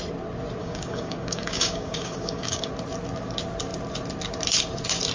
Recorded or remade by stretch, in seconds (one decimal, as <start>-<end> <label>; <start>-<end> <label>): 0.0-0.6 recorded; 0.6-2.7 remade; 2.7-5.1 recorded